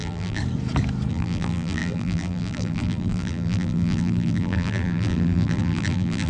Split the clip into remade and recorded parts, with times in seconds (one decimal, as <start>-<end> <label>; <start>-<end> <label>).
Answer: 0.0-0.4 remade; 0.4-1.1 recorded; 1.1-6.3 remade